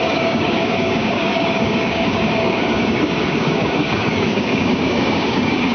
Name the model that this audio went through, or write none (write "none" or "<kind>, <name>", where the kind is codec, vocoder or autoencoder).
codec, DAC